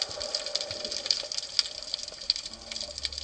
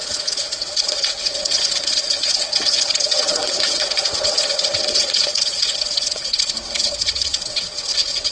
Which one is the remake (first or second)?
second